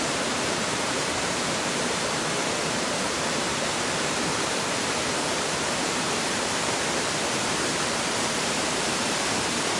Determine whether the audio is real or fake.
fake